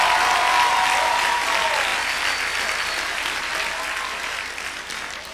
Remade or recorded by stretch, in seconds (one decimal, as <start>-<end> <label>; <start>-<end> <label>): 0.0-5.3 recorded